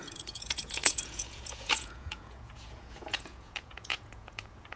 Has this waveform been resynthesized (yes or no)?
yes